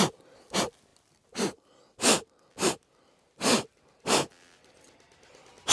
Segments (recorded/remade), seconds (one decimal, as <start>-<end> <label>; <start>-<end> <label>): 0.0-5.7 recorded

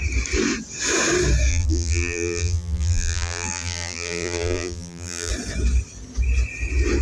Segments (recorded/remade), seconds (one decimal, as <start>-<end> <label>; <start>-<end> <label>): 0.0-1.5 recorded; 1.5-5.3 remade; 5.3-7.0 recorded

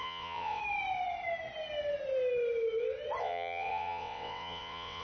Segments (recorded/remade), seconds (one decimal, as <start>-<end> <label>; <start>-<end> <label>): 0.0-0.6 remade; 0.6-3.2 recorded; 3.2-5.0 remade

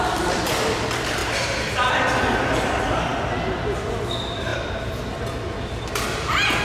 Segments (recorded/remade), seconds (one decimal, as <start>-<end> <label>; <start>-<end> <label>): 0.0-6.6 recorded

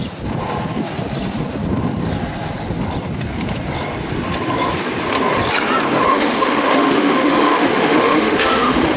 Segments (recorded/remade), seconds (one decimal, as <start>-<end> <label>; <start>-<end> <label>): 0.0-6.1 recorded; 6.1-9.0 remade

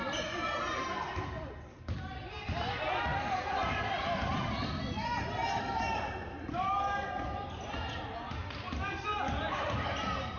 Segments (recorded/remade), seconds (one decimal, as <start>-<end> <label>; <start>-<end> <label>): 0.0-10.4 recorded